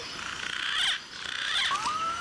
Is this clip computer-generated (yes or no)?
no